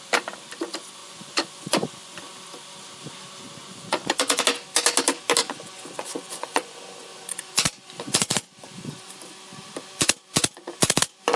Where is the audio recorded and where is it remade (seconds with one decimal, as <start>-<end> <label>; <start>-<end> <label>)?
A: 0.0-1.0 recorded; 1.0-2.2 remade; 2.2-3.6 recorded; 3.6-4.4 remade; 4.4-5.4 recorded; 5.4-9.1 remade; 9.1-11.4 recorded